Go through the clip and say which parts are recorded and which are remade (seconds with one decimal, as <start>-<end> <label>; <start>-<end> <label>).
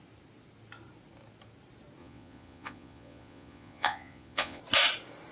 0.0-2.0 recorded; 2.0-4.6 remade; 4.6-5.3 recorded